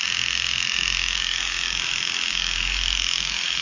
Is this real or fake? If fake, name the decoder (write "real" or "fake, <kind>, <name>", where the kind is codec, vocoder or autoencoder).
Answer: fake, autoencoder, DAC-VAE